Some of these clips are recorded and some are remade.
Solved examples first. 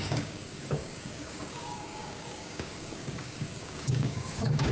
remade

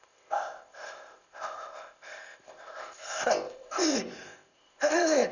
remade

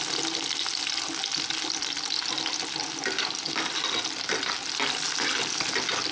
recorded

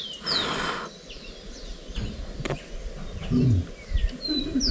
recorded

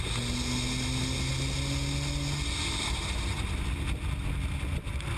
recorded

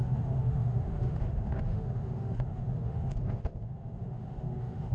remade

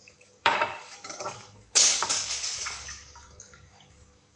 remade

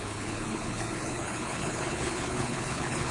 remade